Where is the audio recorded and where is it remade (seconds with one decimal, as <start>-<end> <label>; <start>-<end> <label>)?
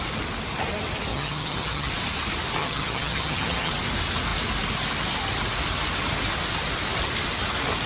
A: 0.0-1.1 recorded; 1.1-1.9 remade; 1.9-2.6 recorded; 2.6-3.7 remade; 3.7-7.9 recorded